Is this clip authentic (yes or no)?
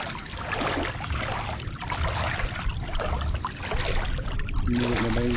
yes